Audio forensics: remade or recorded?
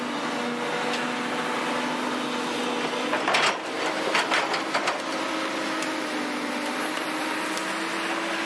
recorded